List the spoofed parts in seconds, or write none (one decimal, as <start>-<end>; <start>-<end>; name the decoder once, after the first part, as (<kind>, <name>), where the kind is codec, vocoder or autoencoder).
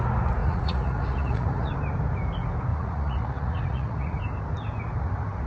0.4-1.7 (vocoder, Vocos); 2.7-4.2